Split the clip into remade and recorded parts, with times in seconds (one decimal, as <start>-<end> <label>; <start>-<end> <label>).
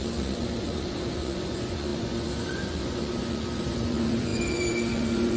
0.0-5.4 remade